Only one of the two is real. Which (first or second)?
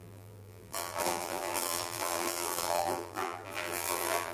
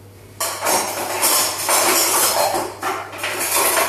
second